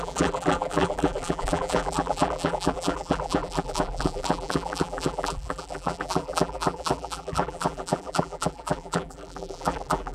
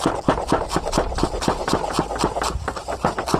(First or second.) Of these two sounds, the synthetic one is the first